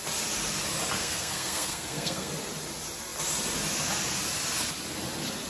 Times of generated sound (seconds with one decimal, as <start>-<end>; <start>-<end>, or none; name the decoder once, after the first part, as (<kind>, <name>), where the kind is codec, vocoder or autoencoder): 1.0-2.3 (codec, SNAC)